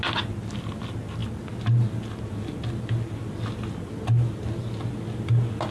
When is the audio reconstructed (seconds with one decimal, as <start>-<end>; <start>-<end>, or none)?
none